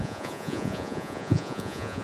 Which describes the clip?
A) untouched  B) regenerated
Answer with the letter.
B